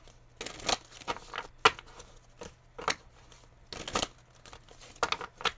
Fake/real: real